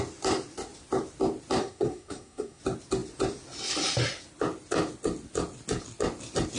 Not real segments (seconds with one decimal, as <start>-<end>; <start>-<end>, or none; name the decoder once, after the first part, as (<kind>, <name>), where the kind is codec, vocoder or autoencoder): 1.6-2.6 (codec, SNAC)